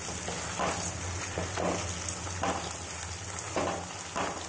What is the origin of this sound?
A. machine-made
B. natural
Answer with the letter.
B